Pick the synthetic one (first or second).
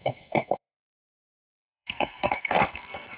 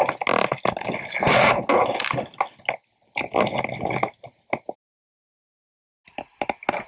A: first